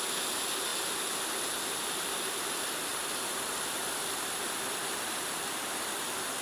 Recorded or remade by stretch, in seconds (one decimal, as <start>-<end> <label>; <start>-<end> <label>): 0.0-2.9 recorded; 2.9-6.4 remade